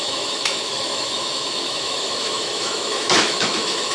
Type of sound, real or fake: fake